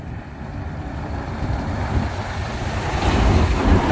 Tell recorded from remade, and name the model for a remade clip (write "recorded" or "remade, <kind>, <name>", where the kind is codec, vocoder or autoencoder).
remade, vocoder, BigVGAN v2